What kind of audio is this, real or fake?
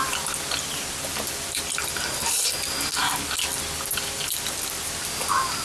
real